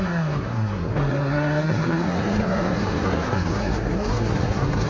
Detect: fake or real fake